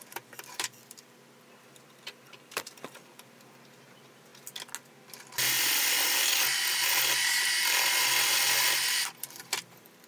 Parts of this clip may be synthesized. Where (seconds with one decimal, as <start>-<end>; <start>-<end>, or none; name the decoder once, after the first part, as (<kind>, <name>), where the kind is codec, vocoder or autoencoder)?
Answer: 0.0-4.3 (vocoder, BigVGAN v2); 8.0-10.1

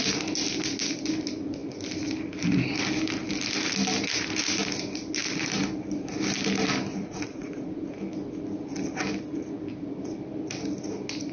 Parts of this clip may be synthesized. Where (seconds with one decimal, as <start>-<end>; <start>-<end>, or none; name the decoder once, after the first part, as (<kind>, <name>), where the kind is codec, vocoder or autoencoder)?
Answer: 6.9-7.9 (vocoder, Vocos)

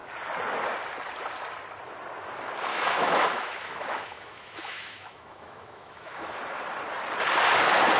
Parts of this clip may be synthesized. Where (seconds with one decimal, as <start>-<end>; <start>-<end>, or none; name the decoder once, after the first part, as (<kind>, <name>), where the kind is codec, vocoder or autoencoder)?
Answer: 2.7-6.4 (autoencoder, DAC-VAE)

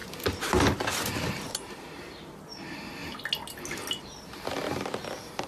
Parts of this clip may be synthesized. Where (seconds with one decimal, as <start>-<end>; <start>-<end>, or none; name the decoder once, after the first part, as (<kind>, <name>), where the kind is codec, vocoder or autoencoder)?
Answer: none

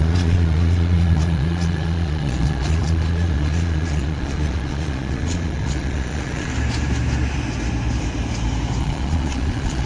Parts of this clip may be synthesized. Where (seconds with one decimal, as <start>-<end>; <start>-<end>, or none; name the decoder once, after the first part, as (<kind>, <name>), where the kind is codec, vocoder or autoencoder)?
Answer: 0.0-6.5 (vocoder, Vocos); 8.8-9.9

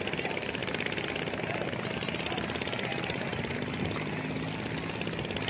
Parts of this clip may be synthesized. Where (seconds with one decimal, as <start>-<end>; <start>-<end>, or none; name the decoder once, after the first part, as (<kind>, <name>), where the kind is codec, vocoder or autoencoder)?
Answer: 2.9-4.0 (vocoder, BigVGAN v2)

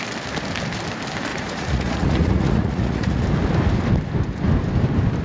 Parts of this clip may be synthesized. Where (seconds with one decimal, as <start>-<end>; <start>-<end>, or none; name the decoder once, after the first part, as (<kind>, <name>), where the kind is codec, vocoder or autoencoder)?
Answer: 1.3-3.2 (vocoder, Vocos)

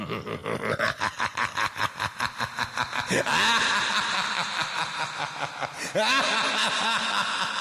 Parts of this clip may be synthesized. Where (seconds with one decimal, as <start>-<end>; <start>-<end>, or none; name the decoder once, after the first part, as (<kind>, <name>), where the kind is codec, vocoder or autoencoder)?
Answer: none